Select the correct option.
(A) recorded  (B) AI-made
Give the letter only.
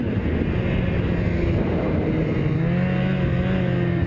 A